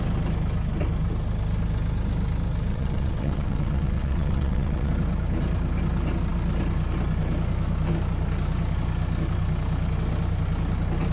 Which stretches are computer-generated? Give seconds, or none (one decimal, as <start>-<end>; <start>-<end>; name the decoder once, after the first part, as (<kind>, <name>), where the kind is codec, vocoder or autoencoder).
2.7-4.9 (vocoder, WaveNeXt)